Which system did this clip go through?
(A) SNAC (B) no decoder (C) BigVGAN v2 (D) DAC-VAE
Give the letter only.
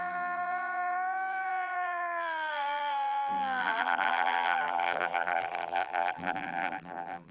C